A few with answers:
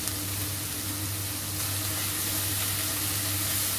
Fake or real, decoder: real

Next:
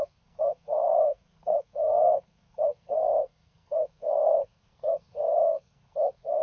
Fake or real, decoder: fake, codec, SNAC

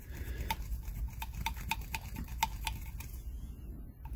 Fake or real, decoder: real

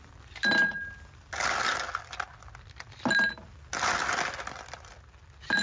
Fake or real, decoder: real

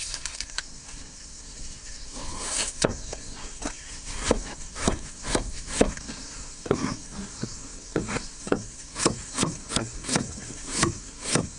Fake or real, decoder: fake, codec, SNAC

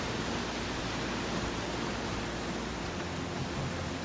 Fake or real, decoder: real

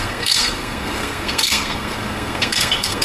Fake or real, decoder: fake, codec, SNAC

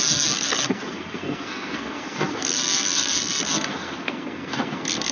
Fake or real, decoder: fake, codec, SNAC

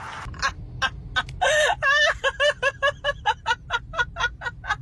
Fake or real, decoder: real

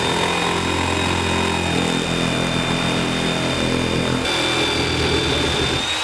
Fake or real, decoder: real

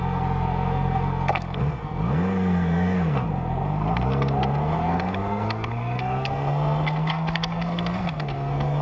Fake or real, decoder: fake, codec, SNAC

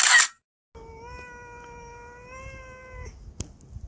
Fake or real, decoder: real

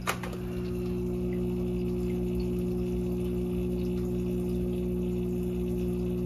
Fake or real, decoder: real